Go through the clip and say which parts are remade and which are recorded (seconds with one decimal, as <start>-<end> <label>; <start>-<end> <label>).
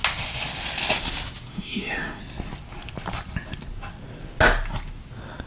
0.0-1.5 recorded; 1.5-2.2 remade; 2.2-5.5 recorded